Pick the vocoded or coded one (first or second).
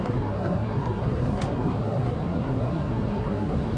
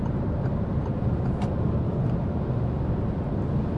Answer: first